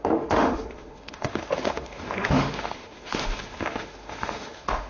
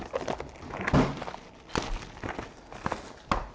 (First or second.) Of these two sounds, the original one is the second